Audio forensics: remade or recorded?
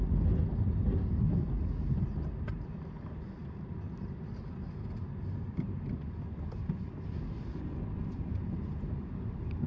recorded